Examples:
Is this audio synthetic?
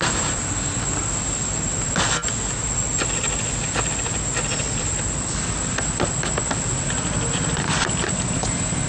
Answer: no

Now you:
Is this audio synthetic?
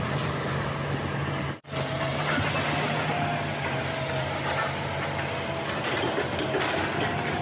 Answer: no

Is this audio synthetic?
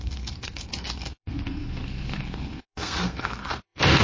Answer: yes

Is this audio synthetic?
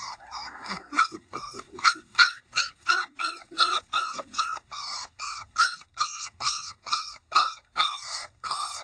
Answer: yes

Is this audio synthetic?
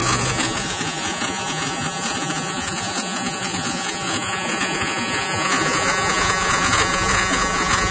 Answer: yes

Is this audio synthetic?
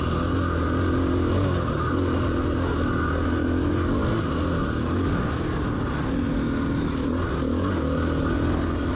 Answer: no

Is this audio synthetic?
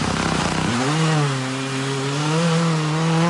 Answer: no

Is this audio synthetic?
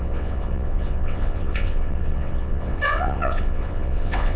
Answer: yes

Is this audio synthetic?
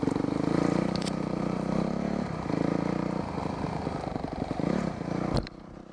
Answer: yes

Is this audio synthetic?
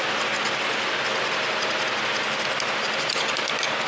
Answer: no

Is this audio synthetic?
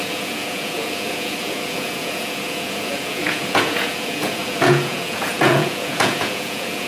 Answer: yes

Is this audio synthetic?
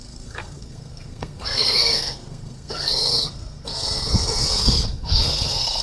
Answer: yes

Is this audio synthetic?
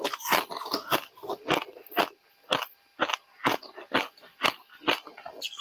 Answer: no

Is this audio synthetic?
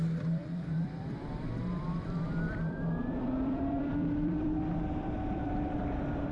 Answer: yes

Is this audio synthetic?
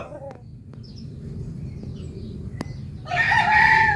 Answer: no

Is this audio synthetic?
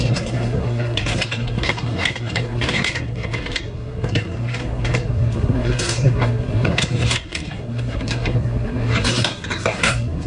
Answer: yes